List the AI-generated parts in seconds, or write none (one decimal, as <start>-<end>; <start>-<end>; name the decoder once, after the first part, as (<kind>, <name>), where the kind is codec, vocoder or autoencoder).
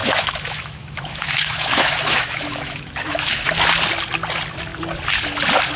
0.0-3.5 (autoencoder, DAC-VAE)